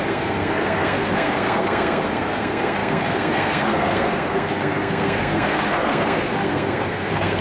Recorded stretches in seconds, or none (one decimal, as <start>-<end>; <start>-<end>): none